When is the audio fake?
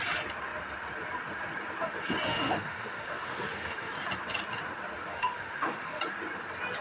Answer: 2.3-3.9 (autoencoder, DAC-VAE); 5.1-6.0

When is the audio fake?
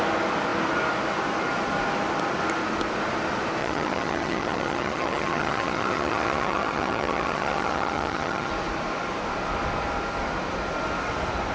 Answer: 3.6-8.5 (vocoder, HiFi-GAN)